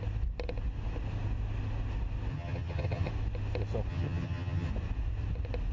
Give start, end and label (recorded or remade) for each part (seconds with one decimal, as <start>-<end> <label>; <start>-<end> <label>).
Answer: 0.0-2.3 recorded; 2.3-3.1 remade; 3.1-3.9 recorded; 3.9-4.7 remade; 4.7-5.7 recorded